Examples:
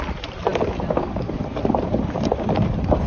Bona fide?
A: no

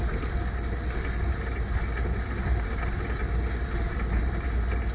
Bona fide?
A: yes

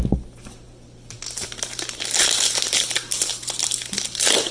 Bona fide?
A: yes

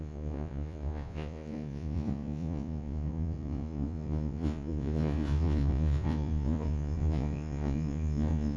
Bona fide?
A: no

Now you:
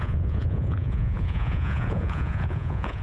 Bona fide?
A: no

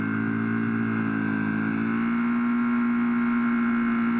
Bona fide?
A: yes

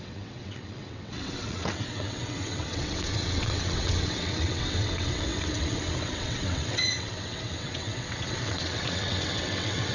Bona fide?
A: no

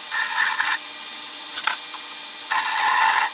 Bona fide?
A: no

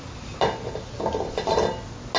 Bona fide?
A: yes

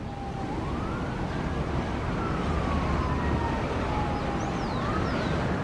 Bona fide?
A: yes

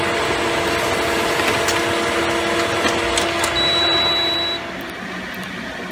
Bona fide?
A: yes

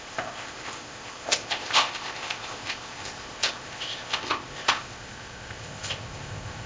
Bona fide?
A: no